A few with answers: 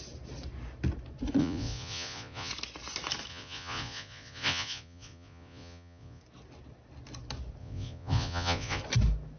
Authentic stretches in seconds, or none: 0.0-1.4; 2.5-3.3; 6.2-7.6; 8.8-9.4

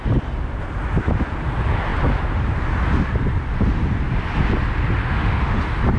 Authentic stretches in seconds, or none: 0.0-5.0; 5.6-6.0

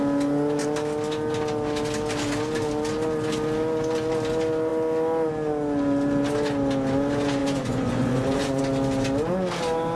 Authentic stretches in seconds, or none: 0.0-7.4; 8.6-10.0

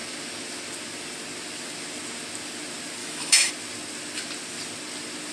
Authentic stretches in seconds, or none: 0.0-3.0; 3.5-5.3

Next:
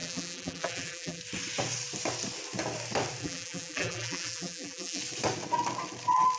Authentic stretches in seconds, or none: 1.2-3.2; 5.0-6.4

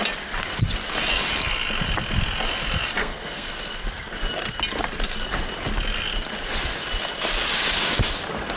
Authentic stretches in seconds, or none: 0.0-3.0; 3.5-8.6